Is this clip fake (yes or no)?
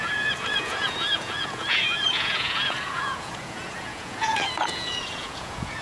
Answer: yes